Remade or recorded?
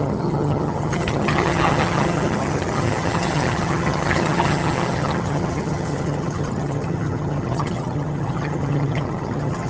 remade